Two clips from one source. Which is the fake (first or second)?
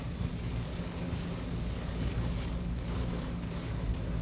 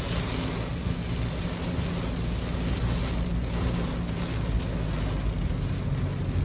first